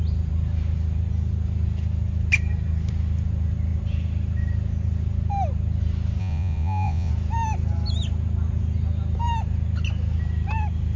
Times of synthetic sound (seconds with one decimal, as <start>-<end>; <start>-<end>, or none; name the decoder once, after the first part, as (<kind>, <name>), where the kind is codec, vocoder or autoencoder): 6.2-7.1 (vocoder, Vocos)